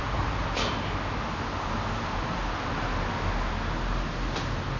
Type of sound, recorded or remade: recorded